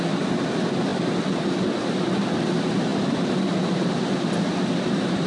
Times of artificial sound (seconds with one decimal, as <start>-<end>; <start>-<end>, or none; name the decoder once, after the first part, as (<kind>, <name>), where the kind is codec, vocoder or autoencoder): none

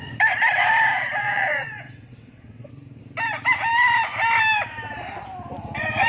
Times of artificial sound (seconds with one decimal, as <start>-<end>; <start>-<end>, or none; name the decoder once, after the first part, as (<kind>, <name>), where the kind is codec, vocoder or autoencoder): 1.2-2.7 (vocoder, WaveNeXt)

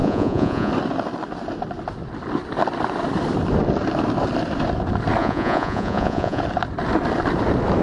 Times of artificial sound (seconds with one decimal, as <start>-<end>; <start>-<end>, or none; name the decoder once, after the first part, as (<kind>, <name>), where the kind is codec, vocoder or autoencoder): 0.0-0.7 (vocoder, Vocos); 5.2-6.4

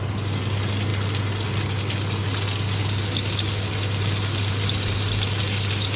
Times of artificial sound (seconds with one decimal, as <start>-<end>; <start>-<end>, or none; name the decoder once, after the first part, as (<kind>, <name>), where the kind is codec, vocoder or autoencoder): none

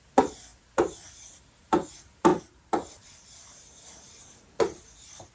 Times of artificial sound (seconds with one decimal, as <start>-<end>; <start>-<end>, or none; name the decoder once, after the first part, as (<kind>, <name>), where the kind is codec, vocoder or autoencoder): none

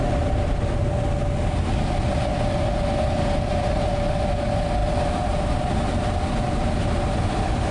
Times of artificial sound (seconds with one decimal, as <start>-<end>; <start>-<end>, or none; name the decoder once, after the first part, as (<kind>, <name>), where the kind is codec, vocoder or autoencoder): none

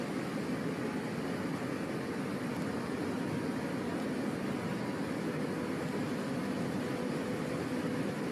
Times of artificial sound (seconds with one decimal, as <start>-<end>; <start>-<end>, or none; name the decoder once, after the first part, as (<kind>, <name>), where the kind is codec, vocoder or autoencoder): none

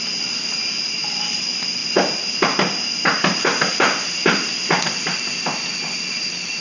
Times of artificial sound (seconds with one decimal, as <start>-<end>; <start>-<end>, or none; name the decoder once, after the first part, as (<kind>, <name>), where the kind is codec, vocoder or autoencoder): none